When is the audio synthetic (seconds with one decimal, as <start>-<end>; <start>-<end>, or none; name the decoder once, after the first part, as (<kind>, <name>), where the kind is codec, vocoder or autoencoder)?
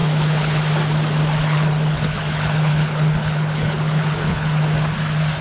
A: 0.0-0.6 (codec, HILCodec); 1.4-4.6